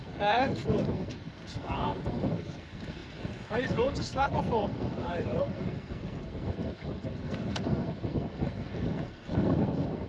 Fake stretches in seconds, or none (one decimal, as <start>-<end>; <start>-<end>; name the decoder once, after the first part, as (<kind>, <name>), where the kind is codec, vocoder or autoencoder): 0.0-10.1 (codec, SNAC)